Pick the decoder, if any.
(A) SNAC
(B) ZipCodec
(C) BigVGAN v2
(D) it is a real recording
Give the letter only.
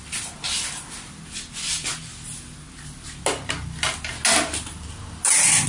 D